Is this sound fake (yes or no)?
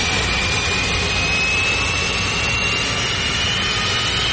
no